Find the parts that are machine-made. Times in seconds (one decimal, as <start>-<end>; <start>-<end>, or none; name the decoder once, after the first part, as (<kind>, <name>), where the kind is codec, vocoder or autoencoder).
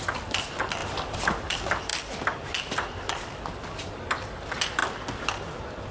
0.0-4.8 (vocoder, BigVGAN v2)